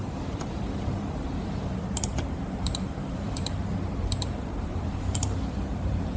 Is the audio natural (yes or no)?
no